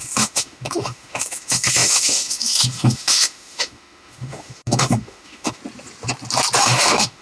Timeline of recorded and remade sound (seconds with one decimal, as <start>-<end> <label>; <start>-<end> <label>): 0.0-5.6 remade; 5.6-6.6 recorded; 6.6-7.2 remade